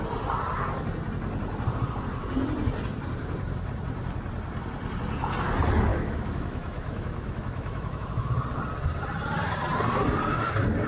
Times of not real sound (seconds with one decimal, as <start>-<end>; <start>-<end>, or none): 5.9-8.3